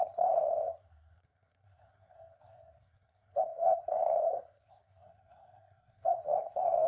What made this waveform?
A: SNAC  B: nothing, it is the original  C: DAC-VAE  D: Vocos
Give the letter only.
A